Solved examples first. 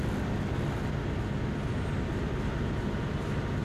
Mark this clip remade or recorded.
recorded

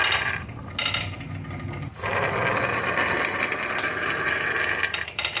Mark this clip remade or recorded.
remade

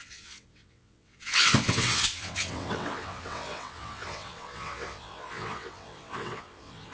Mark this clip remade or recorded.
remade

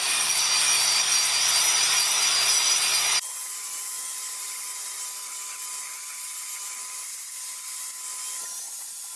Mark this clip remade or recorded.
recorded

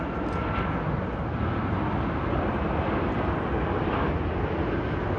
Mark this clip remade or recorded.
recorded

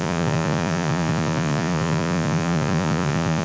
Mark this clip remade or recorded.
remade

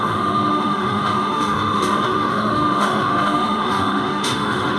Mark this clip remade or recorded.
remade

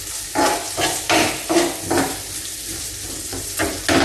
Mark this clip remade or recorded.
recorded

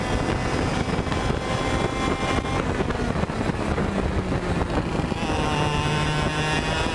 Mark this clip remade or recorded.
recorded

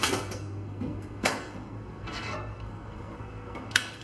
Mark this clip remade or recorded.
remade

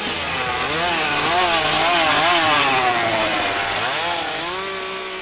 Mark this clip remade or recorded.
recorded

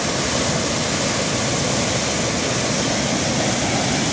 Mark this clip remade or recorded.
recorded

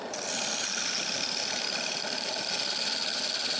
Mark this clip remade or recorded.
recorded